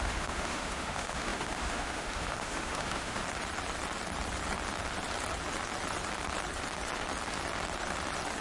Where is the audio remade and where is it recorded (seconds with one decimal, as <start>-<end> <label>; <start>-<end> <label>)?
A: 0.0-3.2 remade; 3.2-8.4 recorded